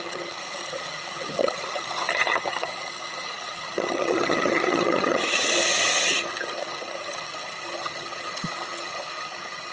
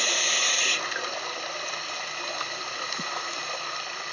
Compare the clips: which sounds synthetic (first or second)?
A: first